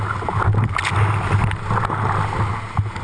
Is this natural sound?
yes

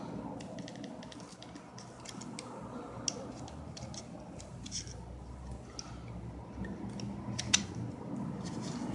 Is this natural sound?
yes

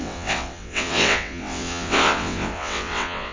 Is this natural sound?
no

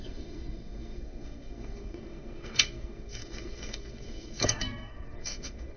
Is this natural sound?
no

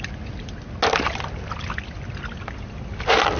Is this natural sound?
yes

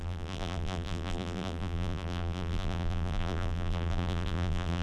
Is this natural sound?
no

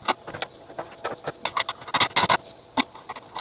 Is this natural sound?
yes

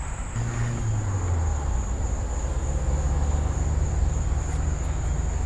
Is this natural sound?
yes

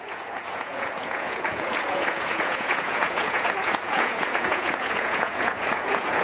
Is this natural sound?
no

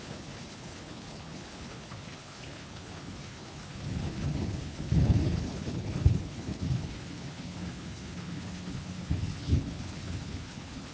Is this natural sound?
no